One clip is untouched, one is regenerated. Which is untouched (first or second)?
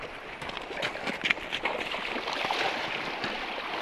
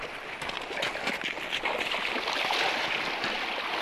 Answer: second